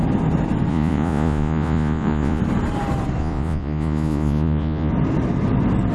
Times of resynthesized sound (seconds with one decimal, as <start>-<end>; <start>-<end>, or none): 0.7-2.4; 3.2-4.9